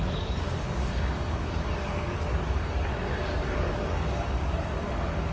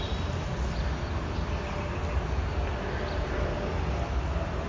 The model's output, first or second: first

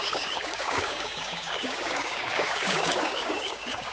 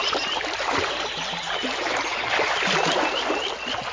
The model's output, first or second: first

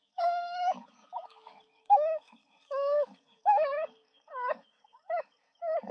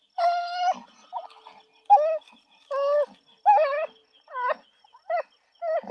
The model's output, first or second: first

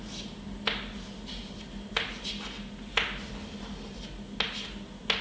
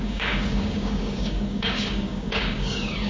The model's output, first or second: second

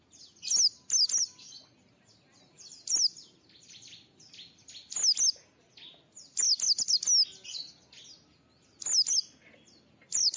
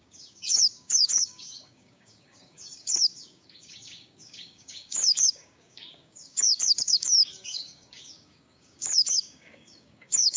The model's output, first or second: second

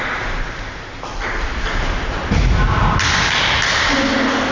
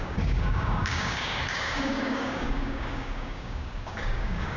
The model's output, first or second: second